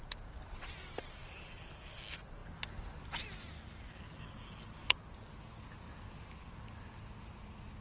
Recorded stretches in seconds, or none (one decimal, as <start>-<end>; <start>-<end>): 0.0-7.8

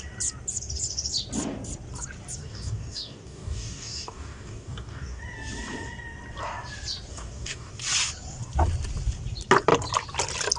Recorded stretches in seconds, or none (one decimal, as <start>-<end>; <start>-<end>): 0.0-2.4; 5.2-7.1; 7.7-10.6

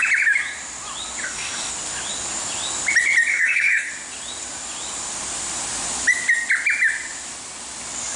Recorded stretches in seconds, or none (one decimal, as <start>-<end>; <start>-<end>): 0.0-1.2; 1.7-3.3; 3.9-8.2

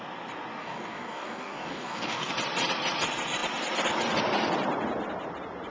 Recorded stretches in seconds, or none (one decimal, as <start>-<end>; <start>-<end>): 0.0-0.6; 2.3-5.7